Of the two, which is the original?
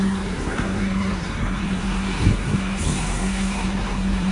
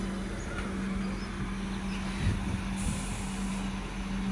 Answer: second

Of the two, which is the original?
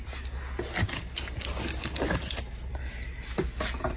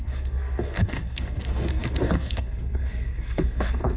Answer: first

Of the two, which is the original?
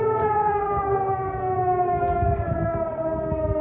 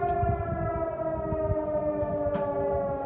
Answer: second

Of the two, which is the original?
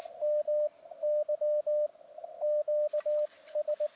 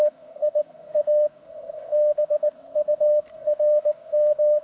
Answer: first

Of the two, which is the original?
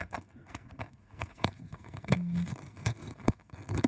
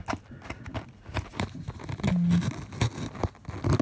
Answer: second